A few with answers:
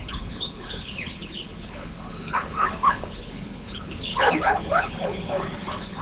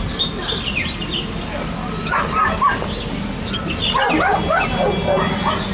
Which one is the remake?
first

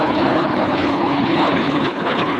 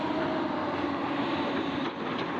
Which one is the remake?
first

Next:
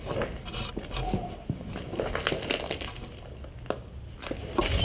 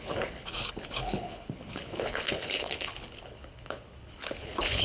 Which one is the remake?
second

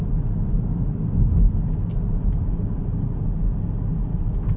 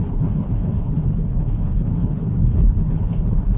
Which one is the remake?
second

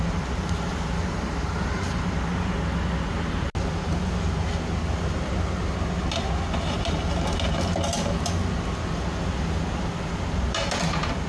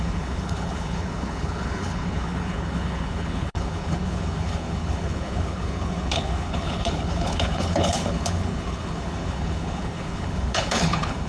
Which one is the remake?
second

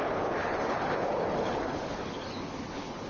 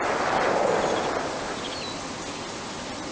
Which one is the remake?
first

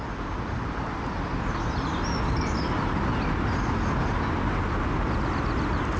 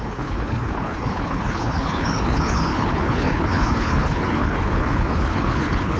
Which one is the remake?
second